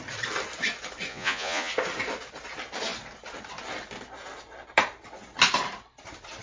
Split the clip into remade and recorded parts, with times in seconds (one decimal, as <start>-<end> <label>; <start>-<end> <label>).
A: 0.0-1.1 recorded; 1.1-1.7 remade; 1.7-6.4 recorded